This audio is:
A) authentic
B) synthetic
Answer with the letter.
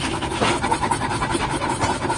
A